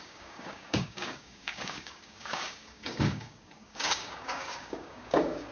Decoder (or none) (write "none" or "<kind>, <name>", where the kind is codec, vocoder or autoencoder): codec, DAC